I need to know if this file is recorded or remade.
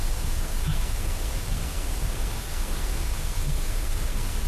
remade